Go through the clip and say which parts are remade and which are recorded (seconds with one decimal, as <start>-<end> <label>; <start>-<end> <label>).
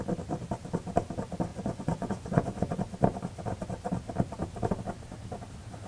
0.0-1.5 recorded; 1.5-2.8 remade; 2.8-5.9 recorded